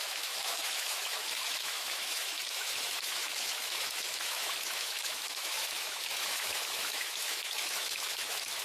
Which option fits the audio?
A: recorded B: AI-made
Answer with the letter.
B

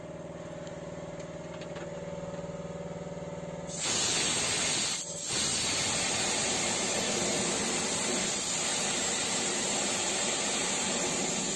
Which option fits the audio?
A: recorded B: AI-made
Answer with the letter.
A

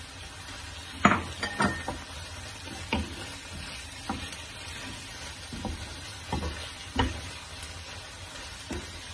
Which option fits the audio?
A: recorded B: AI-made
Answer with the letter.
A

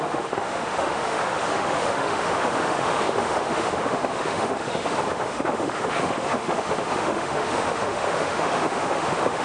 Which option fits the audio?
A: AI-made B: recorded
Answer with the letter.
A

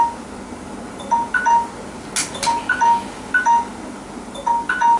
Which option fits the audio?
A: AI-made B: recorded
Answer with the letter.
B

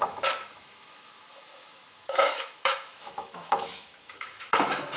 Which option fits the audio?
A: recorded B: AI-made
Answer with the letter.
B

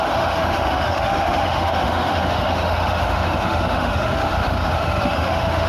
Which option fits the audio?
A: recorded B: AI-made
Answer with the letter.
B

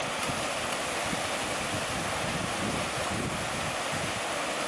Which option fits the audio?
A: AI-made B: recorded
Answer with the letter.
B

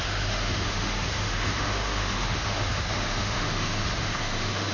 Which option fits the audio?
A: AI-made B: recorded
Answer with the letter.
A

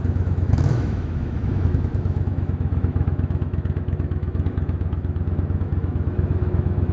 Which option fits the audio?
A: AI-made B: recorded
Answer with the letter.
A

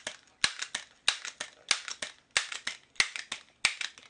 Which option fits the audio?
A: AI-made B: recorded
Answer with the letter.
B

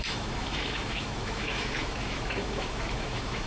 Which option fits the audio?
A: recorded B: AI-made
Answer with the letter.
B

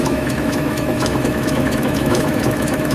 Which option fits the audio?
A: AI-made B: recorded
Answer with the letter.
A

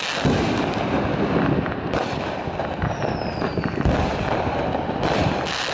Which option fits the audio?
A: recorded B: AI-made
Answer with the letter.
A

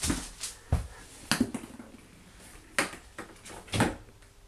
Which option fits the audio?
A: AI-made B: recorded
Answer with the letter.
B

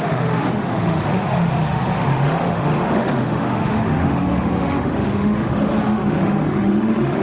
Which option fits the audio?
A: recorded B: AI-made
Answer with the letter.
B